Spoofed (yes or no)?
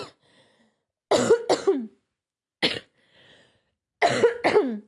no